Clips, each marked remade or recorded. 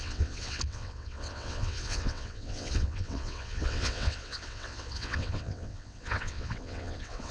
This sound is remade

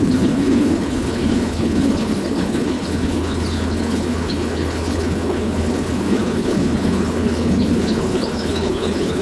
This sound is remade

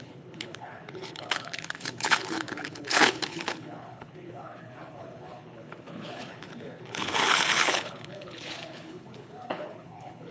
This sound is remade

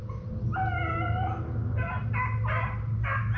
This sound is recorded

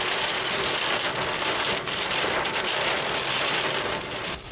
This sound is recorded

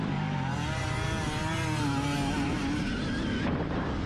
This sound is recorded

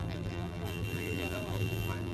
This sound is remade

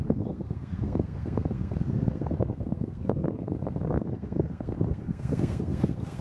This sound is remade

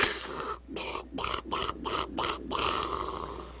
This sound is recorded